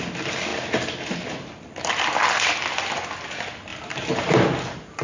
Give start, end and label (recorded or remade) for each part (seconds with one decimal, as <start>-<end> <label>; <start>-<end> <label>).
0.0-5.0 recorded

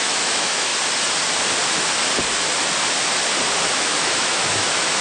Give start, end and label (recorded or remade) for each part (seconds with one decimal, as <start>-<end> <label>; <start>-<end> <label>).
0.0-0.7 remade; 0.7-3.7 recorded; 3.7-5.0 remade

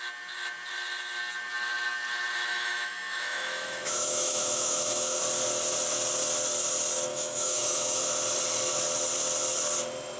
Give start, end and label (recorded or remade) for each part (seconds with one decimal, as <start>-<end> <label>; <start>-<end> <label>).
0.0-2.5 recorded; 2.5-5.2 remade; 5.2-7.1 recorded; 7.1-8.0 remade; 8.0-10.2 recorded

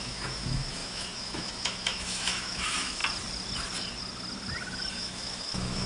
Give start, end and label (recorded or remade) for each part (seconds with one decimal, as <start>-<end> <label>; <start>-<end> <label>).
0.0-3.0 remade; 3.0-4.9 recorded; 4.9-5.9 remade

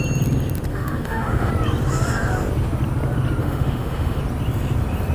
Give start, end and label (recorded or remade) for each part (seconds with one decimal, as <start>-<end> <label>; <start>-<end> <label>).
0.0-0.7 recorded; 0.7-1.5 remade; 1.5-3.4 recorded; 3.4-4.2 remade; 4.2-5.1 recorded

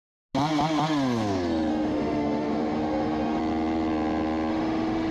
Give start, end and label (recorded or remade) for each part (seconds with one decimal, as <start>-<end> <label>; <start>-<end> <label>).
0.0-1.7 recorded; 1.7-3.4 remade; 3.4-4.5 recorded; 4.5-5.1 remade

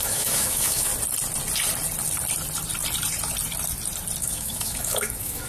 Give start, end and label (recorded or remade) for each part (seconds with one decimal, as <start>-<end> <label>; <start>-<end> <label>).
0.0-0.9 remade; 0.9-4.2 recorded; 4.2-5.5 remade